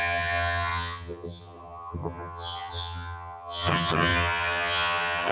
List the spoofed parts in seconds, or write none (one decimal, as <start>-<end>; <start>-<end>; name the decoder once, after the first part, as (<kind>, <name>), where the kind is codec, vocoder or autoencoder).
0.0-5.3 (vocoder, HiFi-GAN)